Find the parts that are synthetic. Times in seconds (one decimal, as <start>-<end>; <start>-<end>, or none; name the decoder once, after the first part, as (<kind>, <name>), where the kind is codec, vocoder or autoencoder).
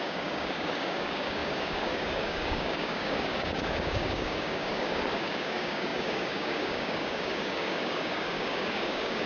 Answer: 0.0-9.3 (codec, DAC)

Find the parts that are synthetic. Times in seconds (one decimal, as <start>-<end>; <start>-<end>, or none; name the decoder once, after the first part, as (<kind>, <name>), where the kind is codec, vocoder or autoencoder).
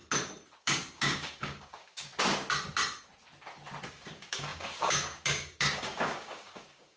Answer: 0.6-2.1 (codec, DAC); 3.9-7.0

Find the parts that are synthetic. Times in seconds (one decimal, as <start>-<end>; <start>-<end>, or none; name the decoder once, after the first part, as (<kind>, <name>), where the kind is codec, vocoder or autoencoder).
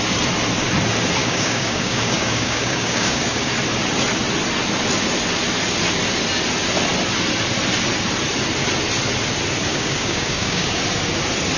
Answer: 1.2-3.5 (codec, DAC); 9.7-10.8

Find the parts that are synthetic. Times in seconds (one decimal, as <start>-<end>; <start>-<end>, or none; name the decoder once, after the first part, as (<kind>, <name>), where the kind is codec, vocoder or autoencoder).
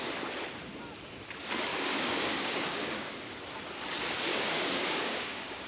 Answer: 1.7-3.1 (codec, DAC); 4.3-5.7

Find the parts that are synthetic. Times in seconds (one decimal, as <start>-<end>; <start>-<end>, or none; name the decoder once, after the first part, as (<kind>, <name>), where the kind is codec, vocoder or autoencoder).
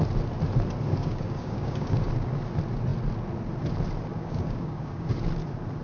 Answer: 0.9-2.1 (codec, DAC); 4.1-5.1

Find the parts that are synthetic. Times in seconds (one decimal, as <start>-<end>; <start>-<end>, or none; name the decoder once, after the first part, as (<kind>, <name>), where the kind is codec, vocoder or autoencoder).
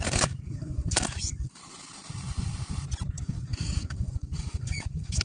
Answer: 0.0-1.6 (codec, DAC); 3.2-5.2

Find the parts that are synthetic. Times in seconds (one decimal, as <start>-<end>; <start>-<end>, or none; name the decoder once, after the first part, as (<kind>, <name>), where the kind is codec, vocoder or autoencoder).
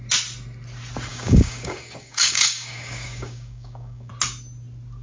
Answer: 1.1-4.1 (codec, DAC)